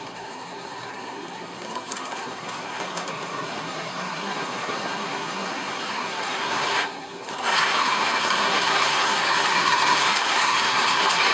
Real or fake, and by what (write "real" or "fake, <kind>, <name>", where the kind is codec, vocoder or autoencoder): fake, codec, SNAC